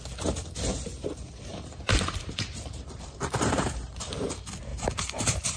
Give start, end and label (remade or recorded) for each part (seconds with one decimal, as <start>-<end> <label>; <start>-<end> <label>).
0.0-1.5 recorded; 1.5-4.0 remade; 4.0-4.7 recorded; 4.7-5.6 remade